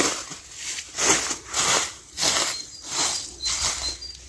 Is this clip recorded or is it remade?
recorded